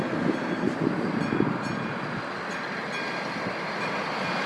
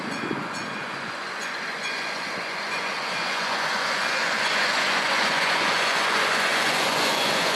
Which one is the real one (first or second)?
first